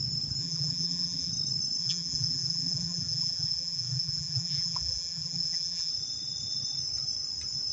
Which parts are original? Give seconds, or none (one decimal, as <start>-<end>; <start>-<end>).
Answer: 0.0-0.4; 1.3-1.8; 5.9-7.7